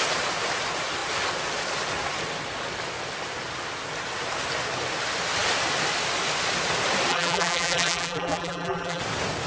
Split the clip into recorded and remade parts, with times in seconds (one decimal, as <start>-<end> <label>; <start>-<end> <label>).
0.0-7.1 recorded; 7.1-9.0 remade; 9.0-9.5 recorded